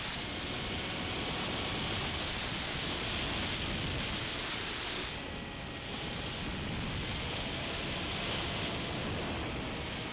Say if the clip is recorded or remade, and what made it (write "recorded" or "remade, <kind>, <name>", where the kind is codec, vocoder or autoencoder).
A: recorded